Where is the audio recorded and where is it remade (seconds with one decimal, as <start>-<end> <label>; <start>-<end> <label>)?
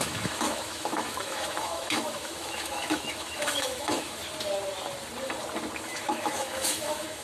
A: 0.0-4.2 remade; 4.2-5.8 recorded; 5.8-7.2 remade